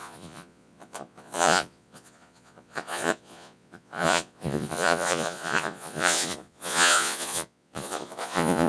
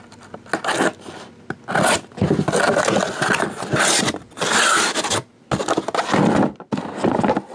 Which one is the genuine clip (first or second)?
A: second